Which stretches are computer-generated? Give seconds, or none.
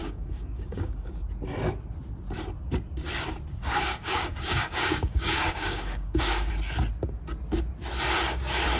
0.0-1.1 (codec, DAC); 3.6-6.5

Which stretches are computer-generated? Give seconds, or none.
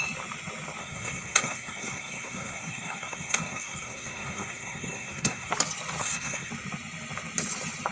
0.8-5.5 (codec, SNAC); 6.0-6.5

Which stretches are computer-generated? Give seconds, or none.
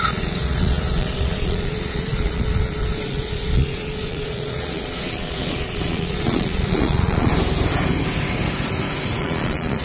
0.0-7.3 (vocoder, Vocos); 9.2-9.8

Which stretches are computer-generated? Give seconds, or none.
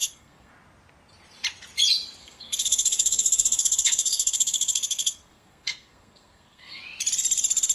0.0-0.5 (codec, SNAC); 2.2-6.8